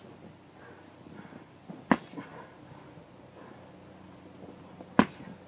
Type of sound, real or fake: real